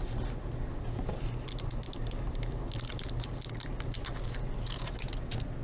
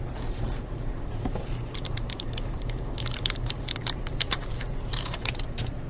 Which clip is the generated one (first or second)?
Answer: second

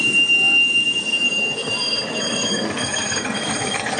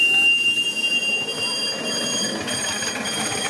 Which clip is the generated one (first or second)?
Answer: first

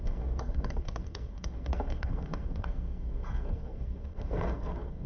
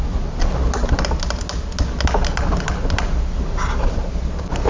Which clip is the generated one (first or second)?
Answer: first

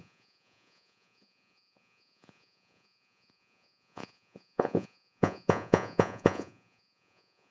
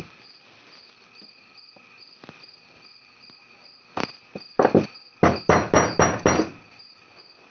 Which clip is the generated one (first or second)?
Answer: first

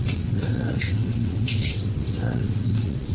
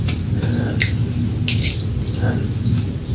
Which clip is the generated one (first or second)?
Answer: first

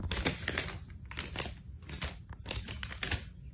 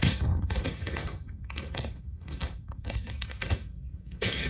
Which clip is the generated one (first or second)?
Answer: second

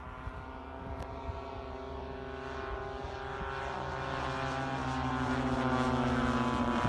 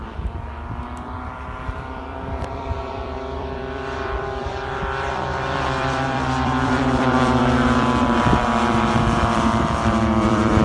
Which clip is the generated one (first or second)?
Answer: second